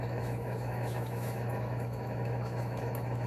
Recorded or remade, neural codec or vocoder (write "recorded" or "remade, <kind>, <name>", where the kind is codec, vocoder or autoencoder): remade, autoencoder, DAC-VAE